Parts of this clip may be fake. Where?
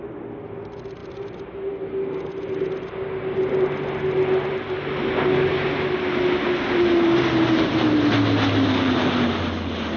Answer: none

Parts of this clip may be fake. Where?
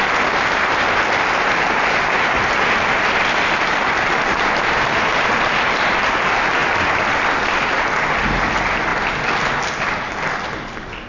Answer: none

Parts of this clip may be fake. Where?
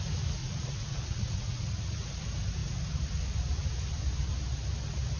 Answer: 0.4-1.9 (vocoder, Vocos)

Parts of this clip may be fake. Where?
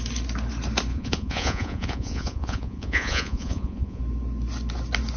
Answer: 0.9-4.0 (vocoder, Vocos)